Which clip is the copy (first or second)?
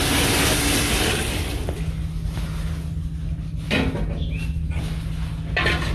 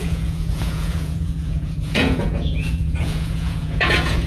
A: second